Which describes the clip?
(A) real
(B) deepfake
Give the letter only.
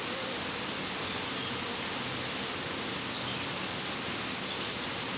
A